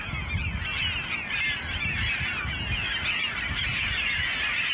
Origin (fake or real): real